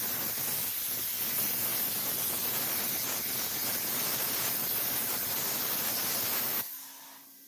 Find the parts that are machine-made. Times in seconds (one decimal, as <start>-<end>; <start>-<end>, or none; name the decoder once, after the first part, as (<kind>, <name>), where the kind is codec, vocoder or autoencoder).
3.6-6.6 (vocoder, BigVGAN v2)